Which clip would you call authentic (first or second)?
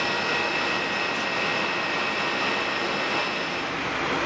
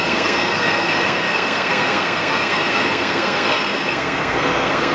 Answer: first